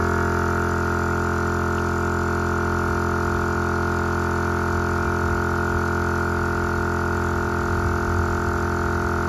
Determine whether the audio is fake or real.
real